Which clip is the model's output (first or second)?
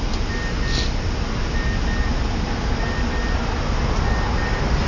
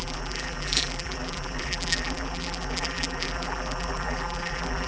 second